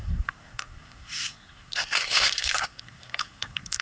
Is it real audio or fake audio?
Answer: fake